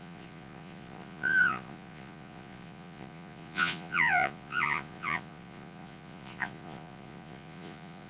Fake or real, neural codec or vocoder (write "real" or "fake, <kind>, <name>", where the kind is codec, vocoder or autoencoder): fake, vocoder, Vocos